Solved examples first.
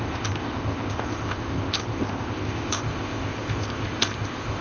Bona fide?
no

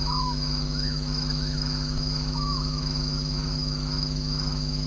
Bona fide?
no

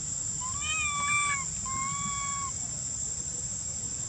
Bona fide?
yes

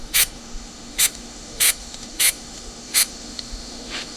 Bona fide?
no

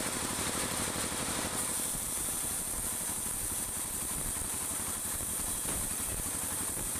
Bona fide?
no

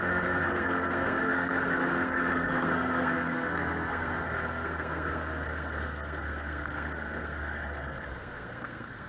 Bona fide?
no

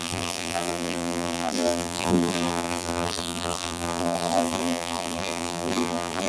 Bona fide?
no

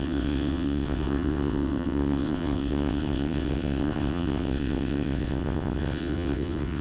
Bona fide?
no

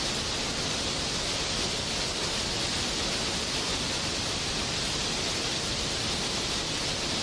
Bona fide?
yes